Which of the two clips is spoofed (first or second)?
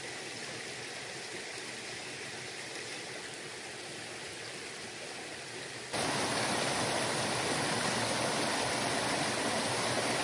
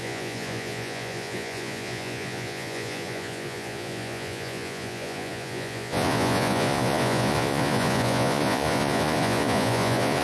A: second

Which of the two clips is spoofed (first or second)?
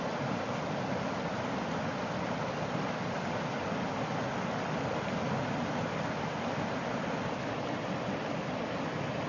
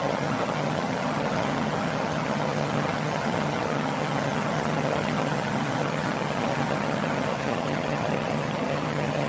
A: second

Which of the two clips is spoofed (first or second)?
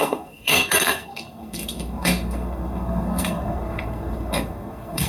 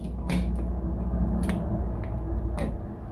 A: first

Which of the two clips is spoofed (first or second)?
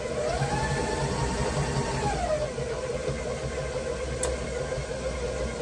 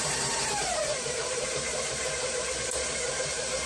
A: second